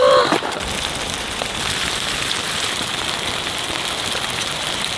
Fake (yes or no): yes